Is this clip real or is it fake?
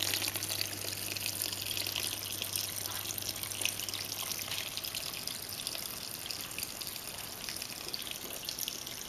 real